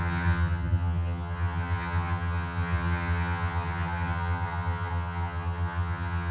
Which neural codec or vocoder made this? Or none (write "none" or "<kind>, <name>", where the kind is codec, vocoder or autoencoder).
vocoder, HiFi-GAN